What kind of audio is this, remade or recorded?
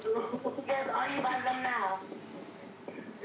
recorded